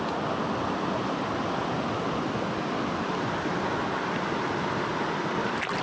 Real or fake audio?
real